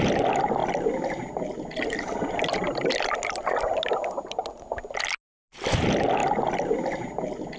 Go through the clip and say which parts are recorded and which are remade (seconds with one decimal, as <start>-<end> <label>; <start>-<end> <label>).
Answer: 0.0-7.6 recorded